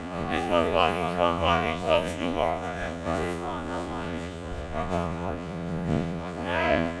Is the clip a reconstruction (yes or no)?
yes